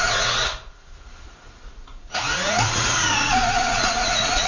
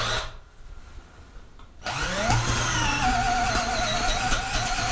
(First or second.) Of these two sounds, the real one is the second